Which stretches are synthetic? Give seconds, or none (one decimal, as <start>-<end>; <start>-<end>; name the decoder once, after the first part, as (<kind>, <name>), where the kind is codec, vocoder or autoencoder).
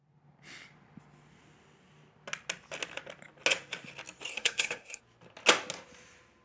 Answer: 4.3-5.0 (codec, SNAC)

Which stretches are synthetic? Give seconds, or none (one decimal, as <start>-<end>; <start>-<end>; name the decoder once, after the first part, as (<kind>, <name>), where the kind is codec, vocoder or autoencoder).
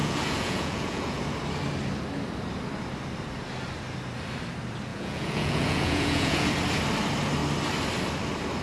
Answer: 0.0-1.2 (vocoder, Vocos); 4.9-6.5